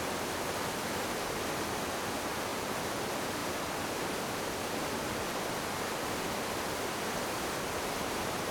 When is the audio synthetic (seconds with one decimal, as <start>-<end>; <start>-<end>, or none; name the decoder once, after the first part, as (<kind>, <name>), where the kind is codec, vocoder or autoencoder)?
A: 2.5-3.0 (vocoder, BigVGAN v2); 3.4-6.8